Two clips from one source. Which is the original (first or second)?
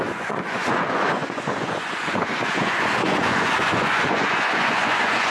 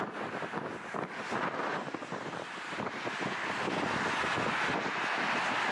second